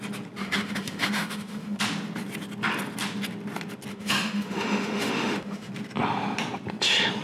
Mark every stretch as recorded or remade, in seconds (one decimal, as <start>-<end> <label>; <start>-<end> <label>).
0.0-0.4 recorded; 0.4-1.8 remade; 1.8-3.9 recorded; 3.9-5.7 remade; 5.7-7.2 recorded